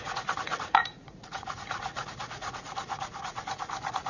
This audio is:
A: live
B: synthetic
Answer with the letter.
B